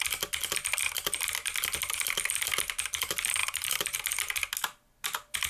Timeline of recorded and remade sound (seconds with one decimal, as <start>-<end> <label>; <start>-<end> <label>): 0.0-3.4 recorded; 3.4-4.0 remade; 4.0-5.5 recorded